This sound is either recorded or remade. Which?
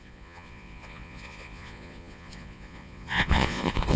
remade